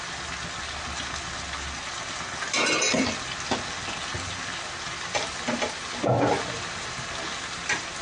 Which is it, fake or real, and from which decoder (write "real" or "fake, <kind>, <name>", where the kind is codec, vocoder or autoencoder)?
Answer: real